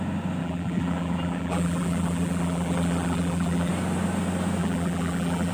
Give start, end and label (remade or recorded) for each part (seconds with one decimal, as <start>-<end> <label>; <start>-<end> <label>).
0.0-0.4 recorded; 0.4-3.7 remade; 3.7-4.6 recorded; 4.6-5.5 remade